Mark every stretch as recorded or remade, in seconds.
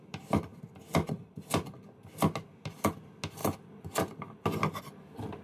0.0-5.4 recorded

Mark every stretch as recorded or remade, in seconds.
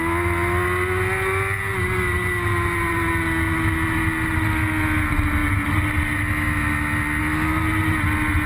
0.0-8.5 recorded